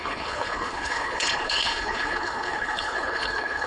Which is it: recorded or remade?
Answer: remade